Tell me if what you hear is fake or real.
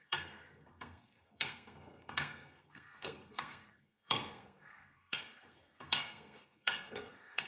fake